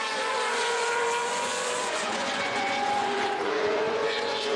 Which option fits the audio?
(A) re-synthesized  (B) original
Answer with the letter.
A